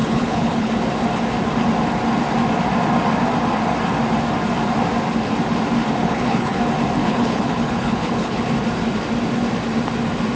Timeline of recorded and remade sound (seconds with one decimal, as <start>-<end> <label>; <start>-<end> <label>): 0.0-0.7 remade; 0.7-6.0 recorded; 6.0-6.6 remade; 6.6-7.0 recorded; 7.0-8.4 remade; 8.4-10.4 recorded